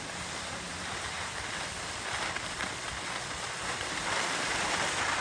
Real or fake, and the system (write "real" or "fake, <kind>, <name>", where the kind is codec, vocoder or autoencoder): fake, vocoder, BigVGAN v2